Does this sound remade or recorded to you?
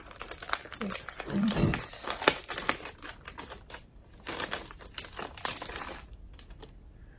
remade